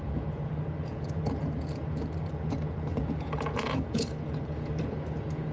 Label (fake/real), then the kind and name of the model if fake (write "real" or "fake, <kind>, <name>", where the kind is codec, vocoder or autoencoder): fake, vocoder, Vocos